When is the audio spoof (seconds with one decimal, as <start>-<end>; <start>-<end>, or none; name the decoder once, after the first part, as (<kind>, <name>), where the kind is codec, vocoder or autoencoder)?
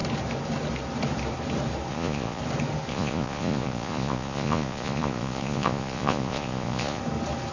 1.9-2.4 (vocoder, Vocos); 2.9-7.0